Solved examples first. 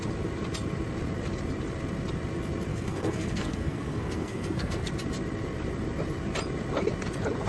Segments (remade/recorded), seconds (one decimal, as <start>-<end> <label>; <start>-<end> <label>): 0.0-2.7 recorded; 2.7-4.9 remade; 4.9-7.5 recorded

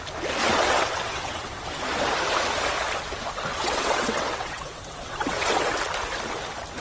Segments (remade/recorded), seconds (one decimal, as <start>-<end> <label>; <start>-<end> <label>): 0.0-0.4 recorded; 0.4-1.6 remade; 1.6-3.5 recorded; 3.5-5.8 remade; 5.8-6.8 recorded

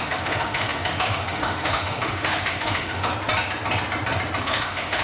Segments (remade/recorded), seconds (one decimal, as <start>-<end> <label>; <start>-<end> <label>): 0.0-3.1 remade; 3.1-4.4 recorded; 4.4-5.0 remade

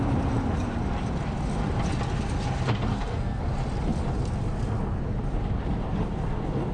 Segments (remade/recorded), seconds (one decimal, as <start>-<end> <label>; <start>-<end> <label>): 0.0-2.9 recorded; 2.9-3.4 remade; 3.4-6.7 recorded